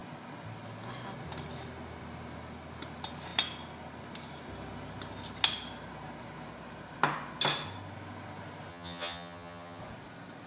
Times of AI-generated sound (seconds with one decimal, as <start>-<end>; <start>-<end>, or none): 8.7-9.8